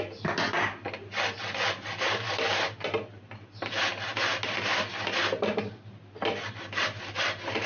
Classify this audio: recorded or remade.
recorded